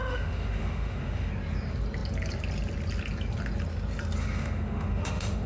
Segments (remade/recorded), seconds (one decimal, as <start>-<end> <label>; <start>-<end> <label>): 0.0-1.3 remade; 1.3-4.2 recorded; 4.2-5.5 remade